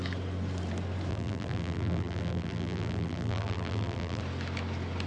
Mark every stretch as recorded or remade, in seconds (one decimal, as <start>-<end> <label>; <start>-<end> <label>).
0.0-1.1 recorded; 1.1-4.2 remade; 4.2-5.1 recorded